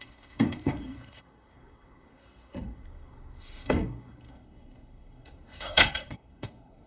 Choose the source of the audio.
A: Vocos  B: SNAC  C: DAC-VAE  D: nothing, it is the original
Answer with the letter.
B